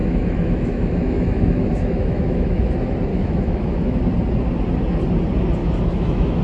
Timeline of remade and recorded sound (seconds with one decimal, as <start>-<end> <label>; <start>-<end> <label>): 0.0-2.7 remade; 2.7-3.1 recorded; 3.1-4.0 remade; 4.0-5.6 recorded; 5.6-6.4 remade